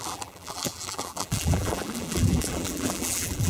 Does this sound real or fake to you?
fake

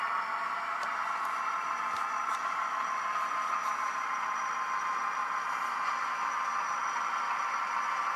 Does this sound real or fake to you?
real